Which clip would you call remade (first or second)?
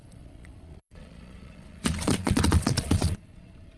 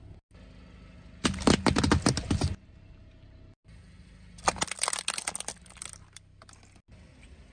first